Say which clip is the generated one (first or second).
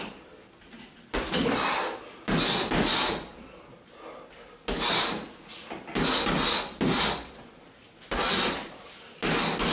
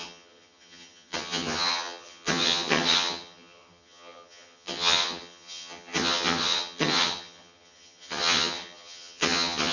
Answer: second